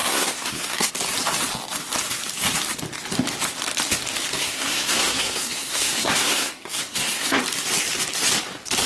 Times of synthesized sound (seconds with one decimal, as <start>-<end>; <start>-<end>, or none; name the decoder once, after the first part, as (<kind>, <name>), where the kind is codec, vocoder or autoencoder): 0.0-0.9 (codec, SNAC); 4.4-7.4